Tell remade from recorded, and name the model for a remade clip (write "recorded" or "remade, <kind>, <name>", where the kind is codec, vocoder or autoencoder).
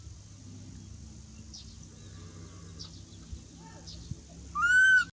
recorded